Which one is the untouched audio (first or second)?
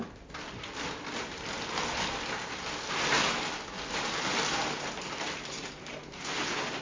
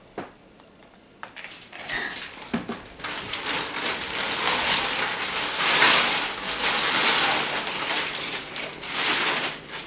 first